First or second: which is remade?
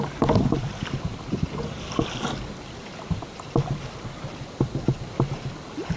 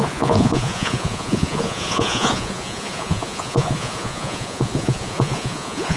second